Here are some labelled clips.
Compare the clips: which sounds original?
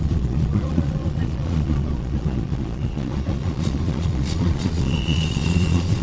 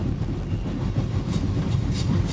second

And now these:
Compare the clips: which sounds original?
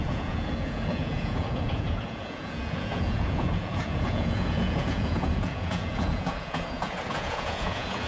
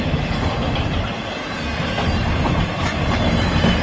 second